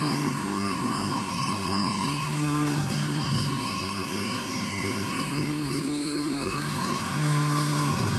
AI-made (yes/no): yes